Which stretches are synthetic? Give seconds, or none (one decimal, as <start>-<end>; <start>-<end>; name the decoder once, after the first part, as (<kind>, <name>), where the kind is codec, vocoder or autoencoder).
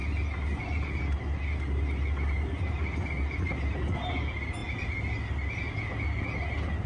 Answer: none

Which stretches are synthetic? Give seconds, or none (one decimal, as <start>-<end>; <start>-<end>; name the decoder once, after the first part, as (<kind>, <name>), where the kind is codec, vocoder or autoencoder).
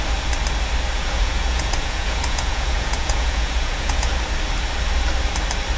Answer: 1.0-4.1 (vocoder, Vocos)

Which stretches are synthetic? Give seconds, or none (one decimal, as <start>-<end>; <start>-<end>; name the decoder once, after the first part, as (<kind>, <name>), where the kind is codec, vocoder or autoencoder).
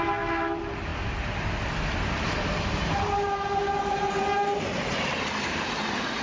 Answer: none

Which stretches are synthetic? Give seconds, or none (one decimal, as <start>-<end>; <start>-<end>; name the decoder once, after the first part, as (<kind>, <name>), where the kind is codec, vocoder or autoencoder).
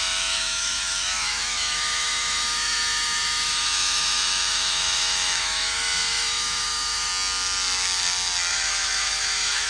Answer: 0.0-7.1 (autoencoder, DAC-VAE); 8.5-9.7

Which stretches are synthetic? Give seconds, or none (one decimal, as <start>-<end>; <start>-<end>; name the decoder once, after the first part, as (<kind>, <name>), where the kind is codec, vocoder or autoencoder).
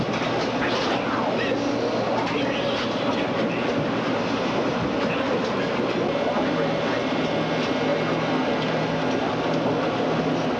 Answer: 7.9-10.2 (vocoder, BigVGAN v2)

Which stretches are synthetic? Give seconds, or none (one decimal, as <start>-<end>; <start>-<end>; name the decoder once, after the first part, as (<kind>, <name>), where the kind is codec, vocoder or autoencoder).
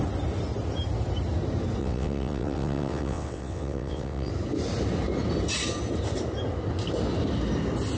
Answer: 1.8-4.3 (vocoder, WaveNeXt)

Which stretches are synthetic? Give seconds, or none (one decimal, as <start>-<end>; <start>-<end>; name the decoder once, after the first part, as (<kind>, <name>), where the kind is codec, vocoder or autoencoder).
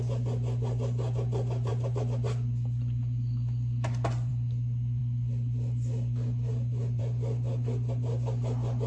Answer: none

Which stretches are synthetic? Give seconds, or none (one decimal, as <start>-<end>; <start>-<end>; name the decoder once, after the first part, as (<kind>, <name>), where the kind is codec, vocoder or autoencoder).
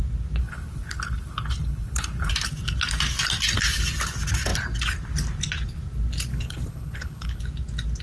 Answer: 0.4-2.3 (codec, HILCodec); 6.3-7.4